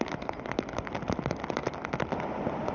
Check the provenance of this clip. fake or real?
real